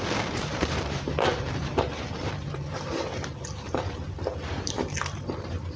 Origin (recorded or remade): remade